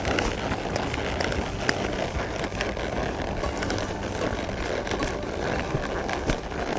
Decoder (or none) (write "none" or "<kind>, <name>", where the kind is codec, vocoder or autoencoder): none